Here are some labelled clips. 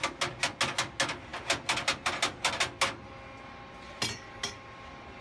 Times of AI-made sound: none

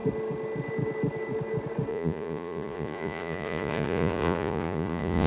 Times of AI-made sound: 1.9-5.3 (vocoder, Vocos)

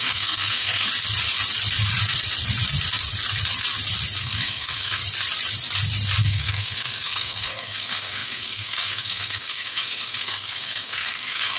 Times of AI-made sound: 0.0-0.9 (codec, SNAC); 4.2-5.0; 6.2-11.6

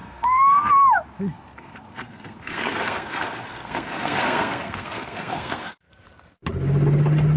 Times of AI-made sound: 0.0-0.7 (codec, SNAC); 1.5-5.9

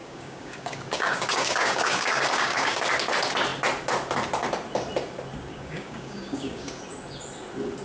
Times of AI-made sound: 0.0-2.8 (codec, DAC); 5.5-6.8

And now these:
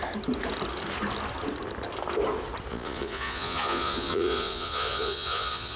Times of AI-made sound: 2.7-5.8 (vocoder, Vocos)

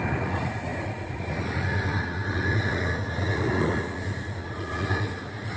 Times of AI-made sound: 0.0-5.6 (vocoder, Vocos)

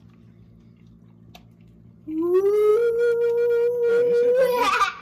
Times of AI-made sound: none